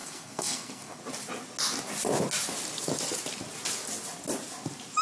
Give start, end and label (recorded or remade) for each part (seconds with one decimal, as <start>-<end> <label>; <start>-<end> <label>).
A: 0.0-1.0 remade; 1.0-5.0 recorded